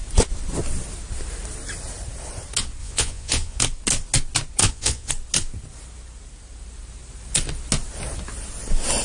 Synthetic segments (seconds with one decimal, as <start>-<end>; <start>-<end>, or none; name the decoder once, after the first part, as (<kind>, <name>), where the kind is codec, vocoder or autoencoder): 2.8-3.6 (vocoder, Vocos); 4.6-5.1